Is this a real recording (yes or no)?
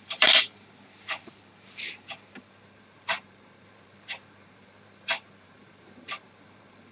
no